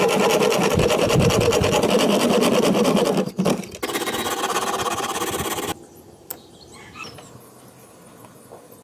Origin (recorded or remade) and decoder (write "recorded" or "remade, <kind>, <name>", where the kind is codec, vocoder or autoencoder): recorded